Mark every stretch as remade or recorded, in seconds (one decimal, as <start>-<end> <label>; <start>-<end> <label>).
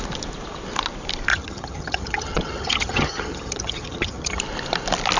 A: 0.0-1.3 recorded; 1.3-4.4 remade; 4.4-5.2 recorded